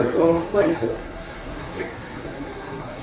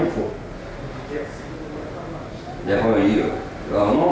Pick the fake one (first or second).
first